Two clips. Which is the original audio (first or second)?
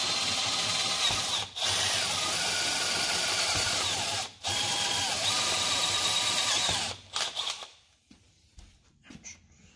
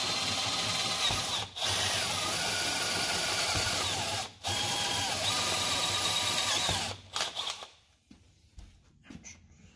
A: second